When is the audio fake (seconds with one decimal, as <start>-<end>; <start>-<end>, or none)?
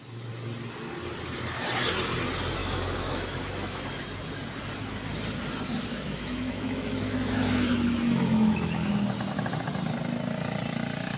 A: 2.6-3.8; 5.9-8.9